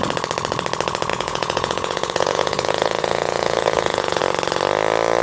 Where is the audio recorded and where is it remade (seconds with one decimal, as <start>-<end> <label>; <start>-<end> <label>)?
0.0-1.1 recorded; 1.1-4.2 remade; 4.2-5.2 recorded